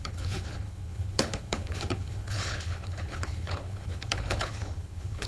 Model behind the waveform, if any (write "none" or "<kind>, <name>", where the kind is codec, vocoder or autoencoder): codec, HILCodec